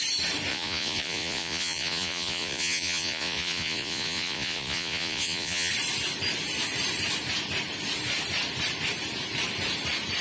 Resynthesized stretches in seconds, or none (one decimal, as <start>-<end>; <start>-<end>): 0.5-5.7